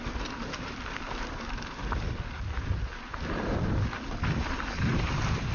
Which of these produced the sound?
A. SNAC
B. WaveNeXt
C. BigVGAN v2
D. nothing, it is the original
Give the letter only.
C